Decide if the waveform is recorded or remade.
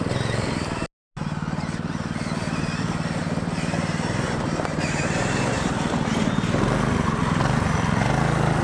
recorded